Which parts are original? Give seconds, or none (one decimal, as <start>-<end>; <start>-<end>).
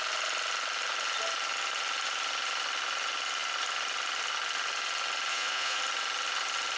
0.0-5.3; 5.8-6.8